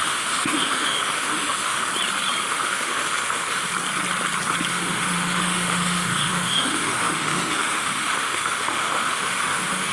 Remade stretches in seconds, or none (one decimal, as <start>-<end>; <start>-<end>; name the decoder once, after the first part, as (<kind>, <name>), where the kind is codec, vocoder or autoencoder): 0.0-1.9 (autoencoder, DAC-VAE); 2.4-3.7; 4.7-9.9